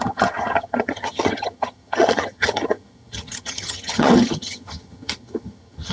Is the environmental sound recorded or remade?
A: remade